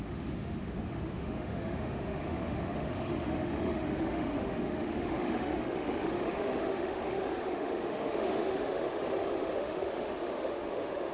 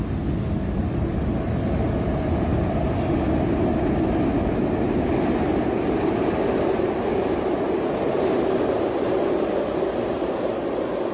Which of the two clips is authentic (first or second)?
second